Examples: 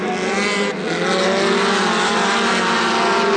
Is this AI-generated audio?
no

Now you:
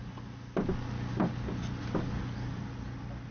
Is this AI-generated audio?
yes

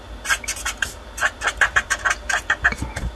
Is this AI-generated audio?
no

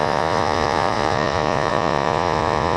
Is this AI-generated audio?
yes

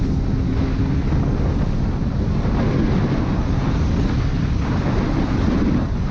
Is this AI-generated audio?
no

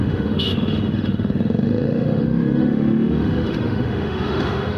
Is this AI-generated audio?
yes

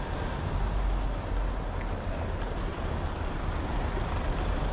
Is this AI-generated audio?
no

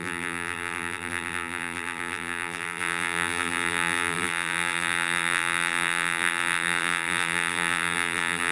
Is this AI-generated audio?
yes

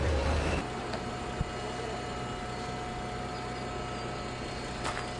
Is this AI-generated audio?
no